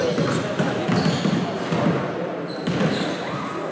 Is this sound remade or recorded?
recorded